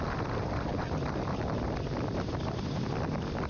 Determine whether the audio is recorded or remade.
recorded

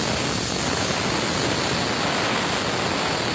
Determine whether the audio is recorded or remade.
recorded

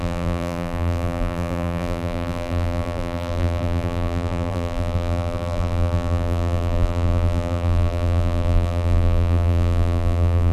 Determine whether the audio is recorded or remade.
remade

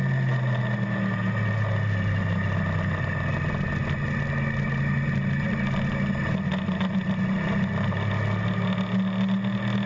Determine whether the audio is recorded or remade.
recorded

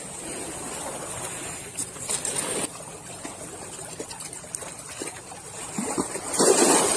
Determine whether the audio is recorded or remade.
recorded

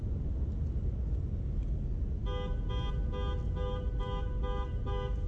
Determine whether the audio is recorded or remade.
recorded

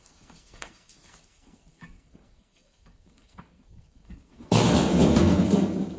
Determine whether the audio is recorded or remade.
remade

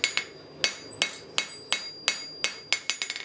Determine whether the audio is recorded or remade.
recorded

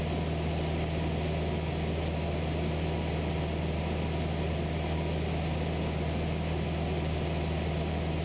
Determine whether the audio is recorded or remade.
recorded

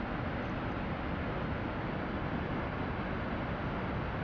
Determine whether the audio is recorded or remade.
recorded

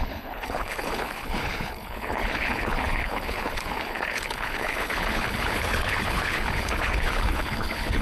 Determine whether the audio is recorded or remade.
remade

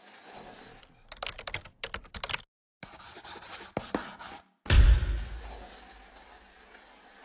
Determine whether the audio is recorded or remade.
recorded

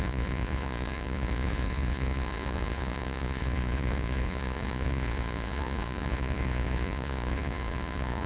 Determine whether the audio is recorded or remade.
remade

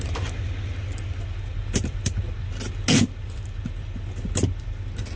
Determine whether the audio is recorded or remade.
recorded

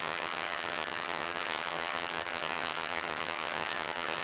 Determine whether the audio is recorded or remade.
remade